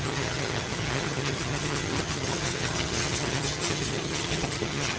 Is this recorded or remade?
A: remade